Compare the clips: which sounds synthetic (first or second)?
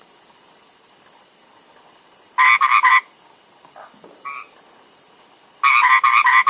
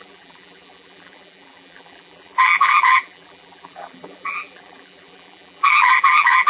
second